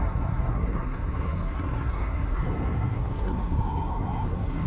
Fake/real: fake